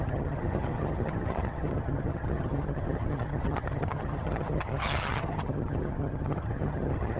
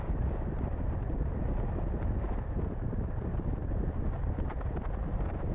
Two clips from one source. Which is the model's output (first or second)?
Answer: first